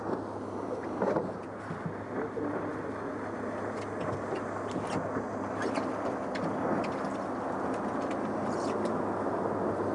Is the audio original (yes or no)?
yes